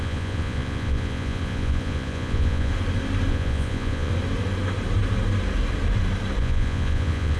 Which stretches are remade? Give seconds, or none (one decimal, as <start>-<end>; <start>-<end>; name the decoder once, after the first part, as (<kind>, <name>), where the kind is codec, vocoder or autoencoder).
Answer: 0.0-2.7 (vocoder, Vocos); 3.3-4.1; 6.4-7.4